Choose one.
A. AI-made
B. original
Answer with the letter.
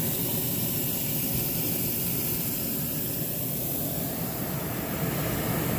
B